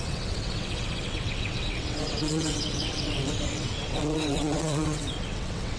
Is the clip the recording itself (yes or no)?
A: no